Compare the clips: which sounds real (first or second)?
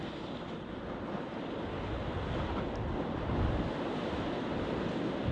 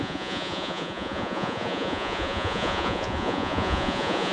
first